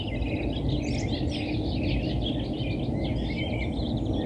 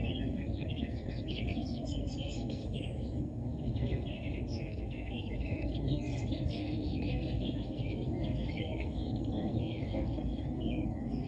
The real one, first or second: first